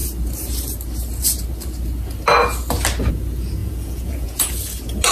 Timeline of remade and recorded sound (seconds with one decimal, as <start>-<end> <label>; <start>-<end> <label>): 0.0-3.6 recorded; 3.6-4.5 remade; 4.5-5.1 recorded